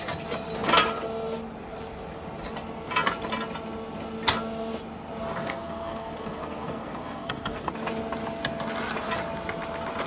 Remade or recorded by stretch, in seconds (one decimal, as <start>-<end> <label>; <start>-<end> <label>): 0.0-5.4 recorded; 5.4-7.7 remade; 7.7-10.1 recorded